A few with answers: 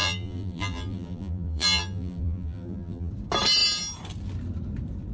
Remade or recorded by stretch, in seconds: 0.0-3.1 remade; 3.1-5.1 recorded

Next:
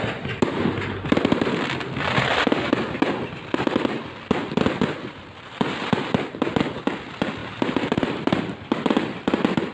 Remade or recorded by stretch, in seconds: 0.0-7.4 recorded; 7.4-8.4 remade; 8.4-9.7 recorded

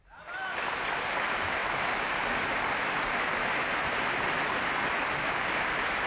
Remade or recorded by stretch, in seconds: 0.0-1.6 recorded; 1.6-5.3 remade; 5.3-6.1 recorded

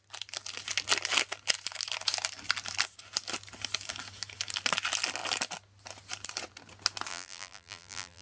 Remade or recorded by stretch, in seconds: 0.0-7.1 recorded; 7.1-8.2 remade